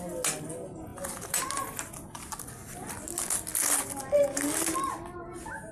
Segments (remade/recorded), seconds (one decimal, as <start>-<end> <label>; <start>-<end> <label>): 0.0-5.7 recorded